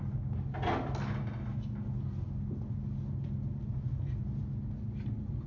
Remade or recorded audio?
recorded